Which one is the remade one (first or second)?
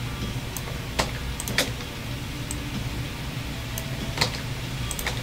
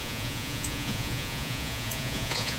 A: second